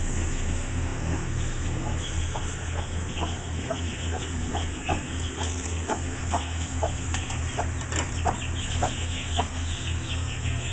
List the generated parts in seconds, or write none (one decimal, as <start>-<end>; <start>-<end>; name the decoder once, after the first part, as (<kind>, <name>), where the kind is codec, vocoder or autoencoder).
0.0-7.4 (codec, SNAC); 8.6-10.7

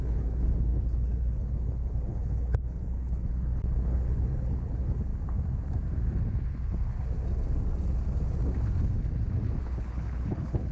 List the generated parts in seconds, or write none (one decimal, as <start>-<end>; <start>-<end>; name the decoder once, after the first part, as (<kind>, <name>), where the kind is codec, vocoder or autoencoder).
0.0-5.1 (codec, HILCodec); 9.6-10.7

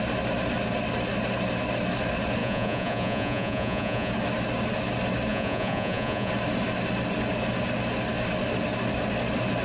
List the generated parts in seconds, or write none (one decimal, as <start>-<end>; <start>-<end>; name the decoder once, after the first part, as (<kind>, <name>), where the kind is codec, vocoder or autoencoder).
2.4-4.1 (vocoder, Vocos); 5.3-6.3

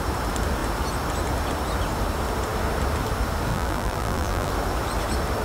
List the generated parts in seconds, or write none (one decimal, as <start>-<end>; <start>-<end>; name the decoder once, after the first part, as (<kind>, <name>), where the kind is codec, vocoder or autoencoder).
3.5-4.5 (vocoder, BigVGAN v2)

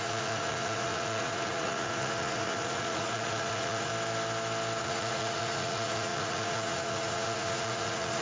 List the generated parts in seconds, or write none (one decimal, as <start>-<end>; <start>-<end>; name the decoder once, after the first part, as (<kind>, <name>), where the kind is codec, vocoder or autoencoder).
0.0-3.9 (vocoder, Vocos); 4.8-8.2

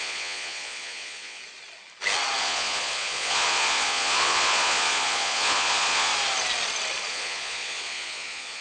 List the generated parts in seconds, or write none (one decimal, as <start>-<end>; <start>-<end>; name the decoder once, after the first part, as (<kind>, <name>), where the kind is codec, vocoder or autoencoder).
0.0-1.4 (vocoder, Vocos); 2.4-6.1; 7.1-8.6

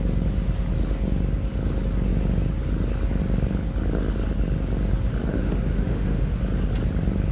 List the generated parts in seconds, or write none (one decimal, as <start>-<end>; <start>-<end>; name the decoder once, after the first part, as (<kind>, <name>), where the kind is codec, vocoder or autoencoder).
5.3-6.4 (autoencoder, DAC-VAE)